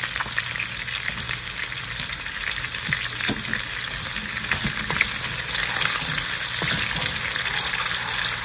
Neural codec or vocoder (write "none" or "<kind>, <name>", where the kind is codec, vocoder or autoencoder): none